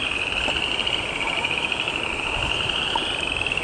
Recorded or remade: recorded